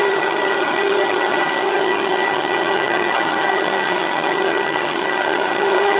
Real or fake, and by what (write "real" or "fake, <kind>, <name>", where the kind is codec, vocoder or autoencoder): fake, vocoder, HiFi-GAN